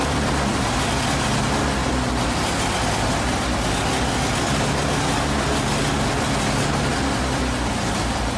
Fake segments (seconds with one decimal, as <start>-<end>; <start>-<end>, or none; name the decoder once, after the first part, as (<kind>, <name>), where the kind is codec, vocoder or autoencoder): none

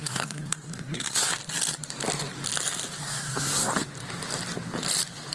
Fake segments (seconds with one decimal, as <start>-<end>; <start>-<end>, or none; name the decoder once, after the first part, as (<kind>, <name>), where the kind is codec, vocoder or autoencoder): 0.0-1.3 (codec, SNAC); 3.0-3.7

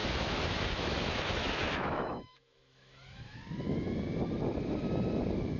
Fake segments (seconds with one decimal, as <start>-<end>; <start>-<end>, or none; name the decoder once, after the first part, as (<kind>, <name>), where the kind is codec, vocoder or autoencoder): 0.0-3.4 (autoencoder, DAC-VAE)

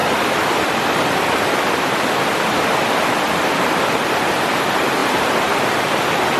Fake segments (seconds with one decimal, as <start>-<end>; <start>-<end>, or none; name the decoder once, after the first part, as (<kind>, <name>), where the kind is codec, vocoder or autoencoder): 0.0-3.8 (vocoder, BigVGAN v2); 5.0-5.6

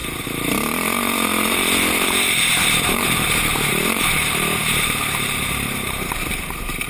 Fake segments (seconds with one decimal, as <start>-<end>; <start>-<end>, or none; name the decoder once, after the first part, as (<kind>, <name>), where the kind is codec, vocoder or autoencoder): 0.0-6.9 (vocoder, BigVGAN v2)

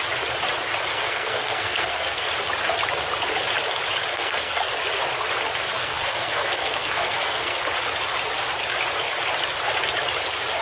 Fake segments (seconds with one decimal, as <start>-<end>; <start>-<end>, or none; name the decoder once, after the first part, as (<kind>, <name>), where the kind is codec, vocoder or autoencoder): 0.9-2.3 (codec, SNAC); 4.1-4.7; 5.8-7.6